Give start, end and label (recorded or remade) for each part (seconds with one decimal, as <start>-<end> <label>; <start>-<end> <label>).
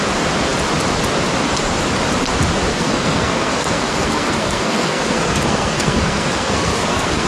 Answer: 0.0-2.7 recorded; 2.7-7.3 remade